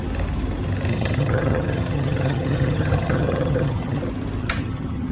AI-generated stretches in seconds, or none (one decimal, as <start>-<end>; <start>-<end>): 0.9-4.0; 4.4-5.1